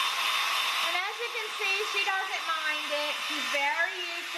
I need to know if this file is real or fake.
real